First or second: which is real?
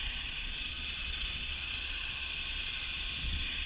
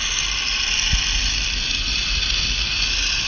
second